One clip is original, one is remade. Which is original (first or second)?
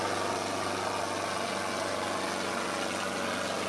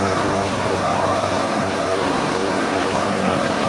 first